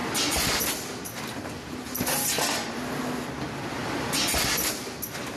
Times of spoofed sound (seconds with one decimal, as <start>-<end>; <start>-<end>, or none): none